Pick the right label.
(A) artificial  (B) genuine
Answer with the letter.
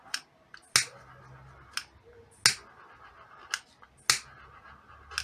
B